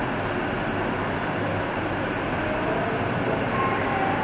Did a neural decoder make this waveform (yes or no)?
no